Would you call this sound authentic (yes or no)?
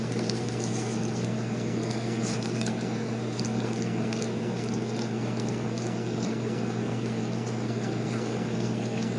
no